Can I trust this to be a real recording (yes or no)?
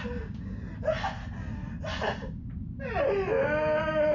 yes